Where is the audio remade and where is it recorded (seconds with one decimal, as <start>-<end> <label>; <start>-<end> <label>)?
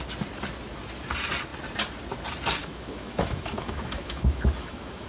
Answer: 0.0-2.6 recorded; 2.6-5.1 remade